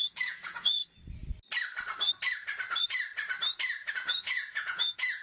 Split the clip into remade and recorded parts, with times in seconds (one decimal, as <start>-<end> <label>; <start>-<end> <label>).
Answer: 0.0-0.8 remade; 0.8-3.9 recorded; 3.9-5.2 remade